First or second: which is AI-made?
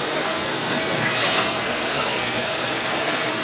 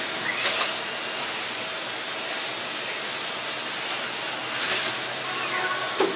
first